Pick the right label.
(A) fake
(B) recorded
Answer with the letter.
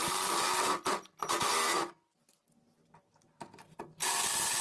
B